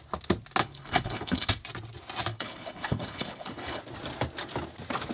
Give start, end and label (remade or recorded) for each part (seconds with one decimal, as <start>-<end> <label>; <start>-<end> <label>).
0.0-0.6 recorded; 0.6-1.5 remade; 1.5-2.3 recorded; 2.3-3.8 remade; 3.8-5.1 recorded